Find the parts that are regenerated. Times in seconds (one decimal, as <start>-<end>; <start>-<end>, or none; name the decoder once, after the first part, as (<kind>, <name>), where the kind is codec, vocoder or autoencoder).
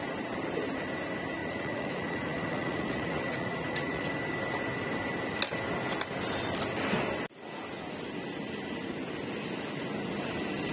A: 1.4-4.1 (vocoder, Vocos)